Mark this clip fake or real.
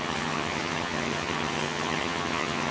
fake